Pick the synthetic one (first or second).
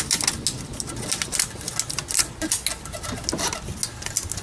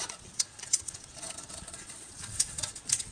second